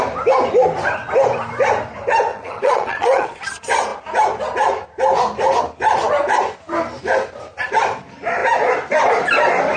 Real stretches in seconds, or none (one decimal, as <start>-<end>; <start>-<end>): 0.0-2.3; 3.4-9.8